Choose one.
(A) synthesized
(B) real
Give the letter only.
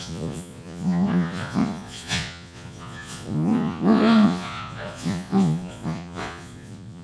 A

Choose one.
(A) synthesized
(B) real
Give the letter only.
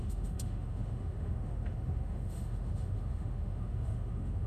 A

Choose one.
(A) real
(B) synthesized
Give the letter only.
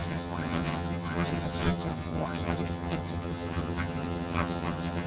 B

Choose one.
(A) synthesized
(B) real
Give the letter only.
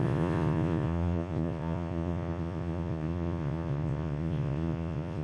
A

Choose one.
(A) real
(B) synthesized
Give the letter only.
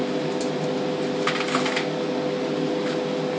A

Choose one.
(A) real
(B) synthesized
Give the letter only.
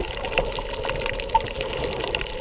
B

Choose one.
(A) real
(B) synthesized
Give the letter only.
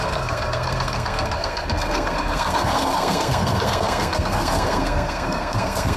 B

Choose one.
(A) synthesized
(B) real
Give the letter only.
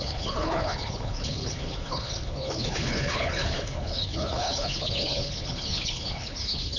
A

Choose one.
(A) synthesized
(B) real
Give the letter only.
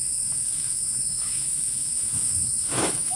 A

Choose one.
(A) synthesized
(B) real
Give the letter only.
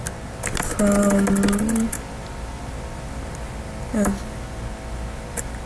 B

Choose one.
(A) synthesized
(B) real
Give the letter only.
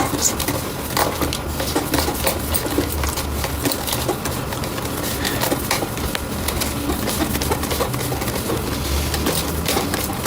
B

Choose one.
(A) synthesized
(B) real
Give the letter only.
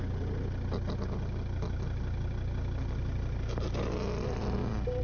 B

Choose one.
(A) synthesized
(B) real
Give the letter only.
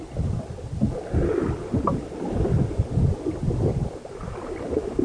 B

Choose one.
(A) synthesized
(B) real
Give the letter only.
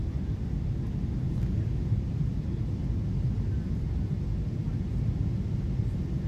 B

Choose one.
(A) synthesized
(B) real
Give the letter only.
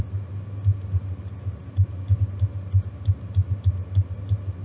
B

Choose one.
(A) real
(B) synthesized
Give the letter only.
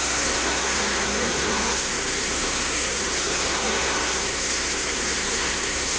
B